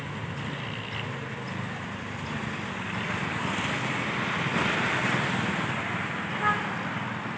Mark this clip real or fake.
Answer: real